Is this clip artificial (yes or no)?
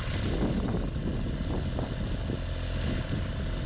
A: no